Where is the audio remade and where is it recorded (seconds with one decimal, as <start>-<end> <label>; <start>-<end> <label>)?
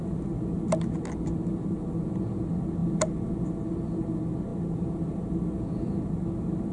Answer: 0.0-6.7 recorded